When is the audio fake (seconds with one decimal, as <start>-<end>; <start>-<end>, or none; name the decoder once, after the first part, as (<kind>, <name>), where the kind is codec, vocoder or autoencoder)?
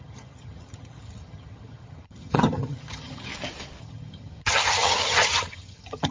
0.0-3.3 (vocoder, HiFi-GAN); 3.8-6.1